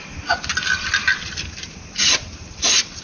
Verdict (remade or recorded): recorded